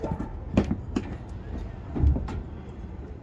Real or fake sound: real